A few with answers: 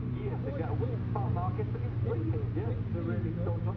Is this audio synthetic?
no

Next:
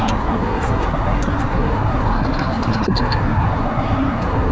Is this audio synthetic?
yes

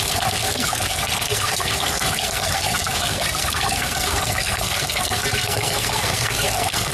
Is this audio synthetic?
yes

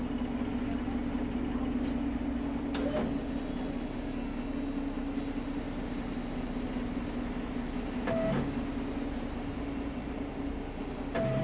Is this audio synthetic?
no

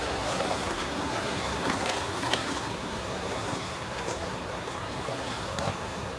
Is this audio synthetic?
yes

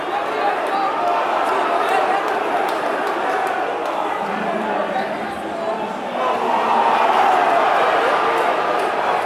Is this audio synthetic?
no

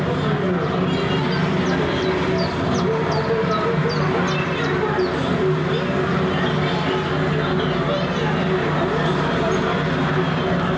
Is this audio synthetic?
no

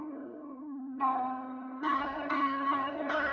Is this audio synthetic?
yes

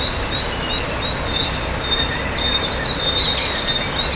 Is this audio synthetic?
no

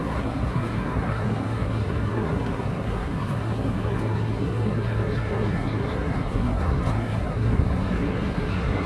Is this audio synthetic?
yes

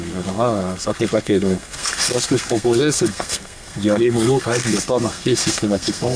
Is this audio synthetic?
yes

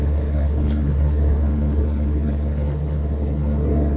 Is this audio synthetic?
yes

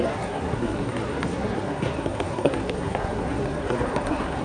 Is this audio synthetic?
yes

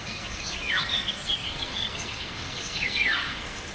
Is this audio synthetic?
yes